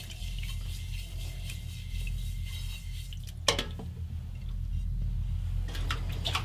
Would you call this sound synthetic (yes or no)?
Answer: no